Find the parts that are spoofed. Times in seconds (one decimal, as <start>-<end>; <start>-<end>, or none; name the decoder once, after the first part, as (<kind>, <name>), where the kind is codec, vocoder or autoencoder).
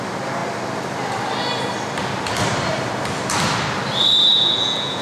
4.3-5.0 (vocoder, Vocos)